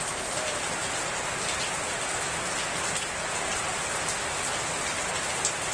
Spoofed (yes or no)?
no